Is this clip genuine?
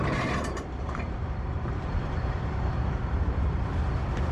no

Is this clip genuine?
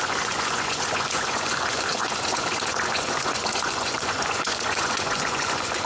no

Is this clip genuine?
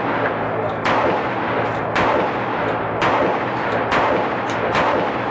yes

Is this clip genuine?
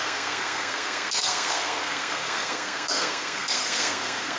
no